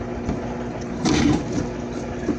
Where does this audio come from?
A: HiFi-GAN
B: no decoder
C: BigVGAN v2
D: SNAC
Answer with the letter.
B